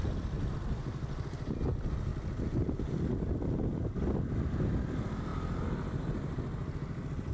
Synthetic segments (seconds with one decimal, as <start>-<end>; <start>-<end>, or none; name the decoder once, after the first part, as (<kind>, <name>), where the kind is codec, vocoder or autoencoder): 2.1-2.9 (vocoder, BigVGAN v2)